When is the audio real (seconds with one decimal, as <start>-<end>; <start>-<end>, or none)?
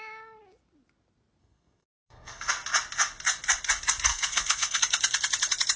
0.0-1.4; 2.5-4.1; 4.8-5.8